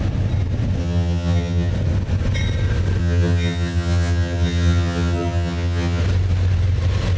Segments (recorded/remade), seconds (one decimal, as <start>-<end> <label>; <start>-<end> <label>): 0.0-0.8 recorded; 0.8-1.7 remade; 1.7-3.0 recorded; 3.0-6.0 remade; 6.0-7.2 recorded